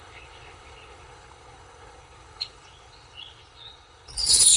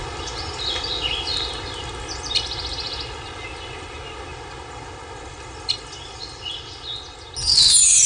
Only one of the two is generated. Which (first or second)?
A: first